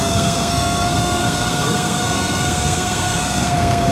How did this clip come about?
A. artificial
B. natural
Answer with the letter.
A